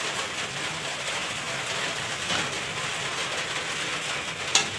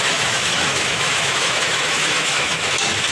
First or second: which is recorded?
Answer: first